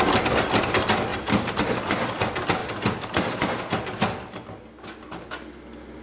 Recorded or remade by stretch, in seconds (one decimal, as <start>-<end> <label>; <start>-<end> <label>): 0.0-1.1 recorded; 1.1-1.6 remade; 1.6-2.6 recorded; 2.6-3.4 remade; 3.4-6.0 recorded

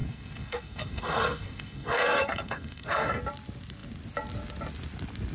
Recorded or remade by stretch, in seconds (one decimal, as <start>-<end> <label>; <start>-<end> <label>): 0.0-3.2 remade; 3.2-5.3 recorded

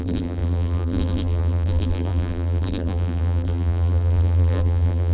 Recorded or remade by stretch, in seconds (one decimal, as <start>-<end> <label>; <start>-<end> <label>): 0.0-5.1 remade

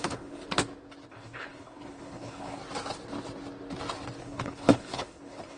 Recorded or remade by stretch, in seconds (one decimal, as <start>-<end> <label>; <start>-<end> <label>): 0.0-0.4 remade; 0.4-1.1 recorded; 1.1-2.6 remade; 2.6-4.2 recorded; 4.2-5.6 remade

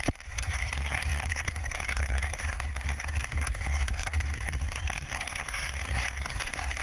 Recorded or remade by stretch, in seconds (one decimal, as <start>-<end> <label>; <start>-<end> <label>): 0.0-6.8 remade

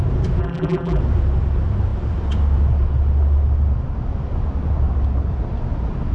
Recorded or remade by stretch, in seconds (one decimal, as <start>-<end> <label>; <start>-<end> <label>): 0.0-0.4 recorded; 0.4-1.0 remade; 1.0-6.1 recorded